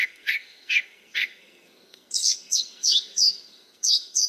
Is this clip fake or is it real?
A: fake